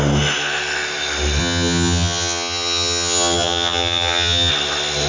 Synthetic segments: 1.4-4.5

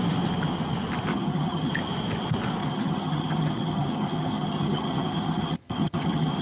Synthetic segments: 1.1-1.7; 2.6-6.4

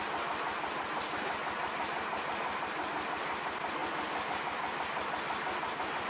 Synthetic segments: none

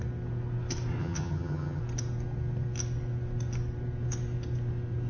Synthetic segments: 1.0-1.8

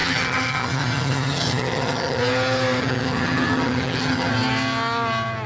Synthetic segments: 0.0-2.2; 2.8-4.3

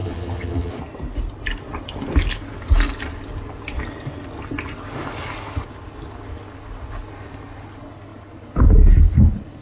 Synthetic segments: 0.0-0.7

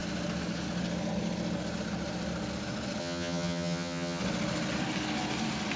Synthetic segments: 3.0-4.2

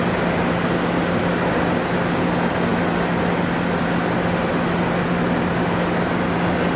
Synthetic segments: none